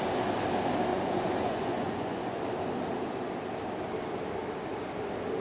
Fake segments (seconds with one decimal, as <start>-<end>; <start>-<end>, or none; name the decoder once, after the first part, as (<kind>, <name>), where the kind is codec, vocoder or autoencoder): 0.9-2.4 (vocoder, Vocos)